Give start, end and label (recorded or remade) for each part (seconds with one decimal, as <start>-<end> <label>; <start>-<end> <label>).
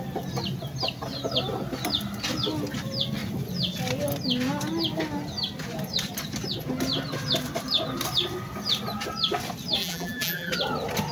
0.0-9.8 recorded; 9.8-10.5 remade; 10.5-11.1 recorded